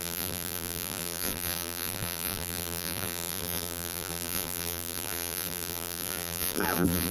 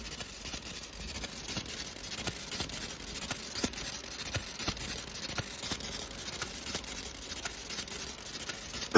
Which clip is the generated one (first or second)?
first